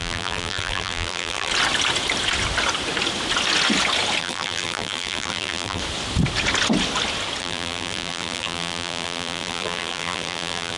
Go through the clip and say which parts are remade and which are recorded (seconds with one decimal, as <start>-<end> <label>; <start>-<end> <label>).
0.0-1.5 remade; 1.5-4.2 recorded; 4.2-5.8 remade; 5.8-7.4 recorded; 7.4-10.8 remade